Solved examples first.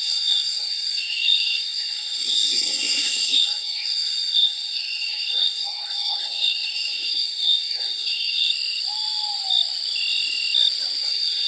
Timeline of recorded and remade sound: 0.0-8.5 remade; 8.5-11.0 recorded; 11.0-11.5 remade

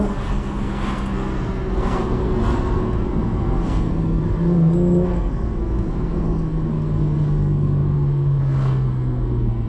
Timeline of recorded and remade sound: 0.0-9.7 remade

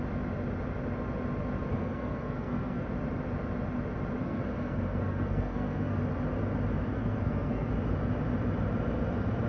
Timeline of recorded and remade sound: 0.0-1.7 recorded; 1.7-2.8 remade; 2.8-4.2 recorded; 4.2-6.0 remade; 6.0-6.9 recorded; 6.9-7.7 remade; 7.7-9.5 recorded

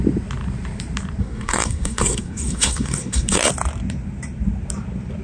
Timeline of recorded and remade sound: 0.0-1.2 recorded; 1.2-3.5 remade; 3.5-5.2 recorded

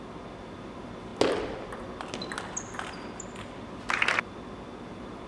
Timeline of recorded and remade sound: 0.0-5.3 recorded

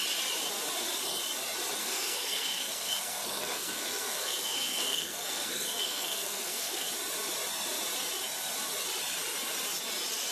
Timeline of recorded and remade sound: 0.0-1.8 recorded; 1.8-6.9 remade; 6.9-10.3 recorded